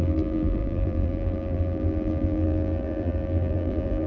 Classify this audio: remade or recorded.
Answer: remade